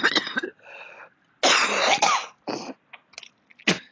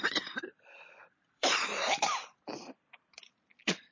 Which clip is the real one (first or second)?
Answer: first